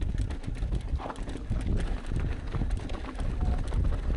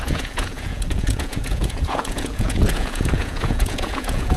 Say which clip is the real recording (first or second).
first